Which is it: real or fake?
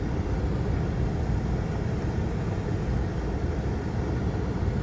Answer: real